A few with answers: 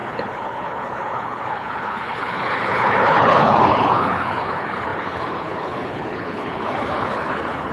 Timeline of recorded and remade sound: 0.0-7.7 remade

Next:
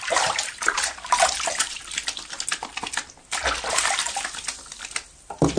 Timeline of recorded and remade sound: 0.0-1.8 remade; 1.8-5.6 recorded